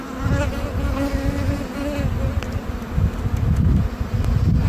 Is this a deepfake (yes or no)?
no